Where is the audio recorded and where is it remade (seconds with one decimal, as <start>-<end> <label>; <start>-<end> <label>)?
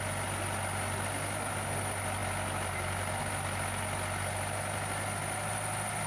0.0-6.1 recorded